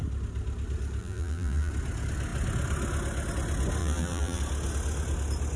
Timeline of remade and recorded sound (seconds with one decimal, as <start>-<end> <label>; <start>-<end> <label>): 0.0-1.0 recorded; 1.0-1.7 remade; 1.7-3.8 recorded; 3.8-4.4 remade; 4.4-5.6 recorded

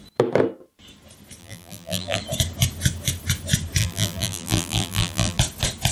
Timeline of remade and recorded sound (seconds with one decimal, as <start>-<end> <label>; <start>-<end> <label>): 0.0-1.4 recorded; 1.4-2.2 remade; 2.2-3.8 recorded; 3.8-5.4 remade; 5.4-5.9 recorded

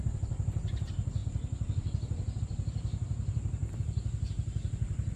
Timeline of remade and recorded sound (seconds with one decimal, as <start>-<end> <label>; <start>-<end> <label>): 0.0-1.2 recorded; 1.2-2.4 remade; 2.4-5.2 recorded

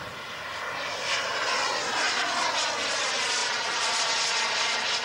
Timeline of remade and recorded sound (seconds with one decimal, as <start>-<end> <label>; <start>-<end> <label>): 0.0-3.4 recorded; 3.4-4.4 remade; 4.4-5.0 recorded